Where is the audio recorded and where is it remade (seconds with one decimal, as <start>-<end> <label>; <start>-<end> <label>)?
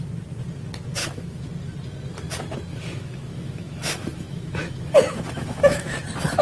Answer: 0.0-1.0 recorded; 1.0-1.5 remade; 1.5-2.7 recorded; 2.7-6.0 remade; 6.0-6.4 recorded